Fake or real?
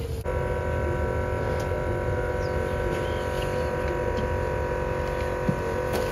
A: real